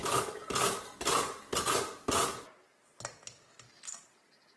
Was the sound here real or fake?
real